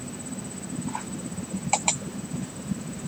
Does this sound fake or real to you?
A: fake